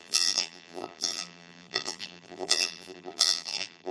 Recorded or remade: remade